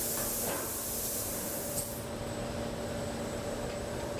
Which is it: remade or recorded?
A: recorded